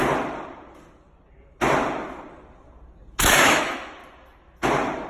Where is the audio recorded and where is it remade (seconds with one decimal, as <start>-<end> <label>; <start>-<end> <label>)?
0.0-3.1 recorded; 3.1-4.0 remade; 4.0-5.1 recorded